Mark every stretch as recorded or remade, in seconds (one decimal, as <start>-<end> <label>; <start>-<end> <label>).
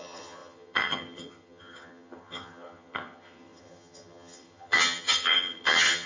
0.0-6.1 remade